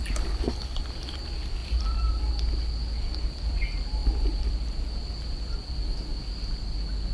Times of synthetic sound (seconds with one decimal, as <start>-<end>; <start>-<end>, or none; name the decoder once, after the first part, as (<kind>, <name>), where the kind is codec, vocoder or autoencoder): none